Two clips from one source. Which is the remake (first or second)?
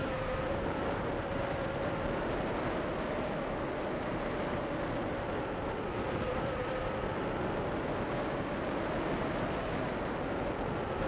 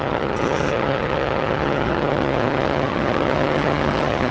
second